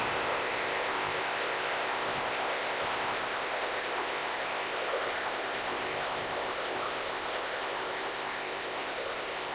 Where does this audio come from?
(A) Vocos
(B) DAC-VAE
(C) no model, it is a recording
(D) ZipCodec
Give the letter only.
D